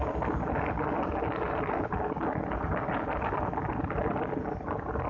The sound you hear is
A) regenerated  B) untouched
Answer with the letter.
B